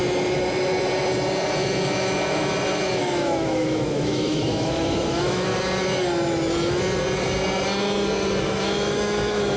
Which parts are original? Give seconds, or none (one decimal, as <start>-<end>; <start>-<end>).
0.0-3.0; 5.5-8.4